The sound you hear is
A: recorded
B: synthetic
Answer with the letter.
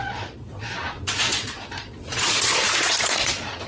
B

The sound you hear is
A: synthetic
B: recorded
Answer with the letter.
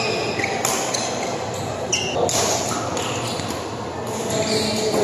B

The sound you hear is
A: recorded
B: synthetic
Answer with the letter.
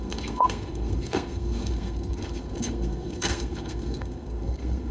B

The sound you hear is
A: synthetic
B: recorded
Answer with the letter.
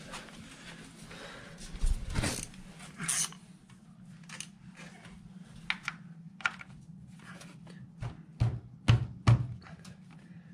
B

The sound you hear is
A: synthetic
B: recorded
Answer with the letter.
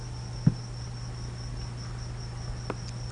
B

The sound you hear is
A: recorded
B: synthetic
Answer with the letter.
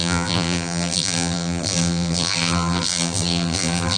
B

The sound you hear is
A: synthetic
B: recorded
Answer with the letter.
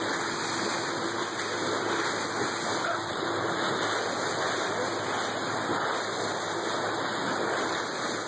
B